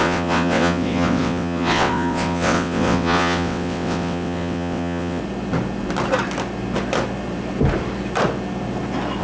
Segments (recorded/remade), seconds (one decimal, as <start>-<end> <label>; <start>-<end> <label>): 0.0-5.2 remade; 5.2-9.2 recorded